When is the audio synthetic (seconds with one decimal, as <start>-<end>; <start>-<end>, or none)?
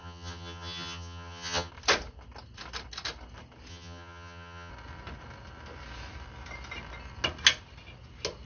0.0-1.7; 3.7-4.7